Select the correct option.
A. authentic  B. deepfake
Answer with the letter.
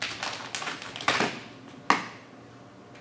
A